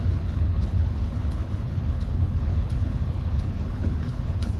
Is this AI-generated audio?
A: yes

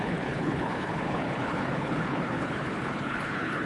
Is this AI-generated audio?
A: yes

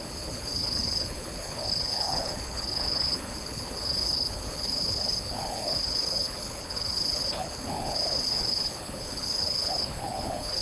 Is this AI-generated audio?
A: yes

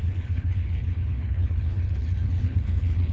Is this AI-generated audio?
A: yes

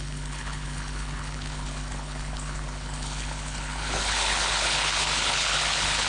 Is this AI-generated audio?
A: yes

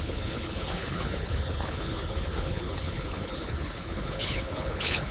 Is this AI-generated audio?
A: yes